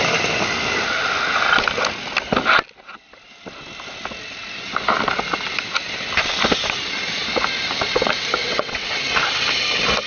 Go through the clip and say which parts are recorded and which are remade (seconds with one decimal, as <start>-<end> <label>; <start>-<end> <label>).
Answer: 0.0-8.4 recorded; 8.4-9.0 remade; 9.0-10.1 recorded